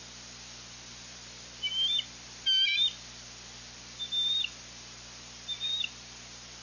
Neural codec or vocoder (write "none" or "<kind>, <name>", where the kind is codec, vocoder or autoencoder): none